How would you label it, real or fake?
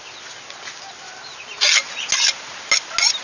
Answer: real